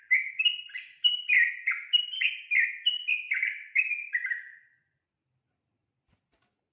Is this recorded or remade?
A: recorded